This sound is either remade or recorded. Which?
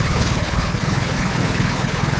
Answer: remade